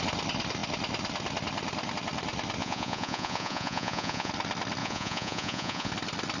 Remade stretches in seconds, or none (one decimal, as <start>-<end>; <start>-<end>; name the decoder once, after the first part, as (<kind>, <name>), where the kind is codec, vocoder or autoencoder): 2.6-4.3 (vocoder, Vocos); 4.8-5.9